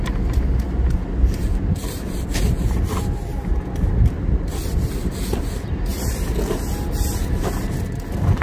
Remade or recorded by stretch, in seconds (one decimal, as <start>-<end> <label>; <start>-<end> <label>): 0.0-1.5 recorded; 1.5-2.3 remade; 2.3-3.3 recorded; 3.3-4.9 remade; 4.9-5.9 recorded; 5.9-6.4 remade; 6.4-8.4 recorded